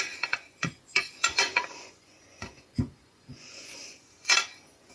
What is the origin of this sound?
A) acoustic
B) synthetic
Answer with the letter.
B